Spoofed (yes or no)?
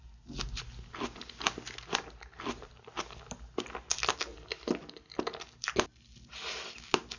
no